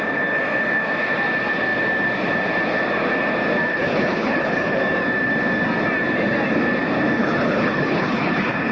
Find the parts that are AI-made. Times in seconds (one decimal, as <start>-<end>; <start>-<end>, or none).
3.7-4.8; 7.2-8.7